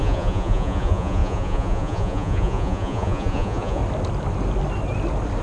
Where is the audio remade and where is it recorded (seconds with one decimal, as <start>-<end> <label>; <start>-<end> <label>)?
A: 0.0-3.8 remade; 3.8-5.4 recorded